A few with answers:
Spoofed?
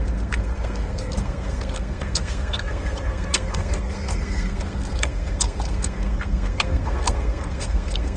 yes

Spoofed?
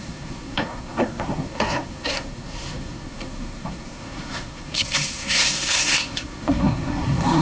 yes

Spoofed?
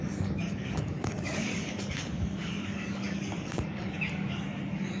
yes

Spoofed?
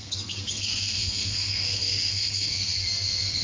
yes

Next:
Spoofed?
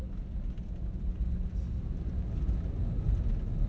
no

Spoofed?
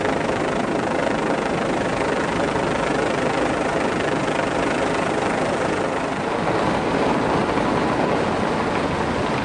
no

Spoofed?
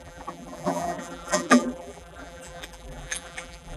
yes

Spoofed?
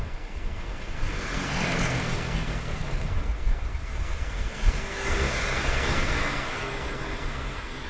yes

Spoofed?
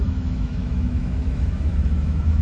yes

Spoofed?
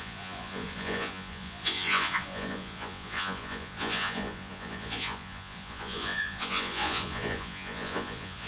yes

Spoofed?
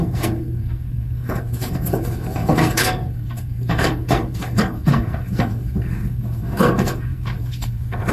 yes